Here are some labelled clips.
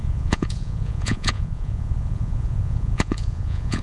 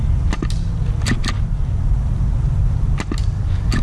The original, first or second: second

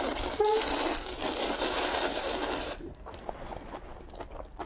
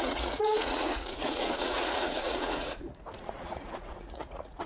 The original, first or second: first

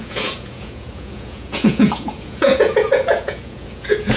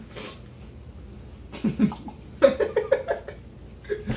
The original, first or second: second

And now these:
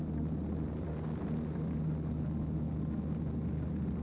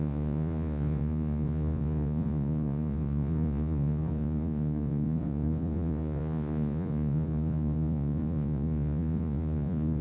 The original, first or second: first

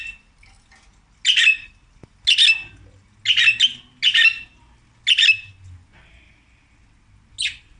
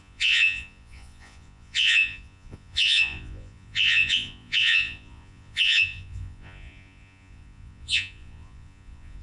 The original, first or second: first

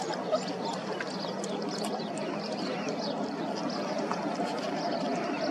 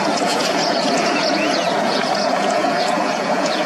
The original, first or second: first